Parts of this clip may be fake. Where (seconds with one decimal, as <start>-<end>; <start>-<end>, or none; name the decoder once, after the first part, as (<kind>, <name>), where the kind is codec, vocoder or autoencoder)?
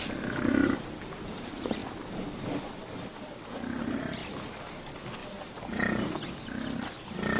none